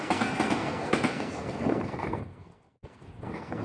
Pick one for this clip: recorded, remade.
remade